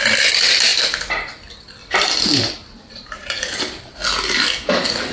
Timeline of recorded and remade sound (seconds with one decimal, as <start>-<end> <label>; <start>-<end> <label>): 0.0-0.7 recorded; 0.7-1.3 remade; 1.3-1.8 recorded; 1.8-4.0 remade; 4.0-5.1 recorded